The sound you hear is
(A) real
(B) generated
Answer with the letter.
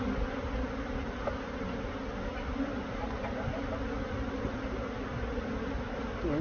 A